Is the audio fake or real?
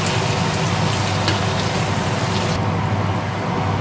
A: real